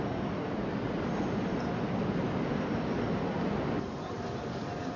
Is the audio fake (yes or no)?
no